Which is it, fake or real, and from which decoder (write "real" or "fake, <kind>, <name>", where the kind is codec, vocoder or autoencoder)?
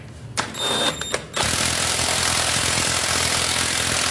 real